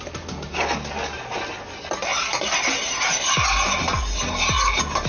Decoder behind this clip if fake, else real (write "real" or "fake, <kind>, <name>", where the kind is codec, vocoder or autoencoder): real